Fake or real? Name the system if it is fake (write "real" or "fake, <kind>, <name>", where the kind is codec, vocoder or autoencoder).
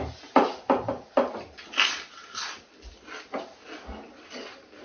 real